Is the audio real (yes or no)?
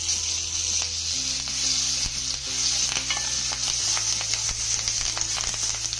yes